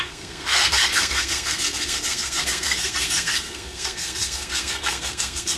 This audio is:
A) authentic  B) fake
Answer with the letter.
B